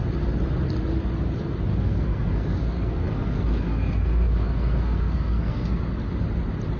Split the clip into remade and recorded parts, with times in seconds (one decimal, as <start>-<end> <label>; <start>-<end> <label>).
0.0-1.7 recorded; 1.7-5.8 remade; 5.8-6.8 recorded